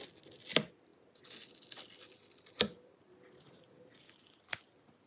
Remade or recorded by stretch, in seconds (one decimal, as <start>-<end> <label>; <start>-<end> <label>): 0.0-5.1 recorded